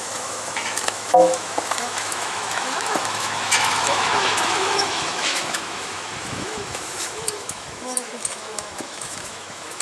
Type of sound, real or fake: fake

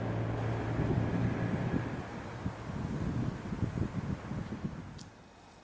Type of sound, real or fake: real